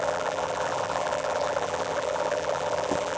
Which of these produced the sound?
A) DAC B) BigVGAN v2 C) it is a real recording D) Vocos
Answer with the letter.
B